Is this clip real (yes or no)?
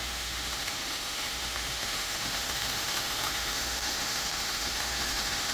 no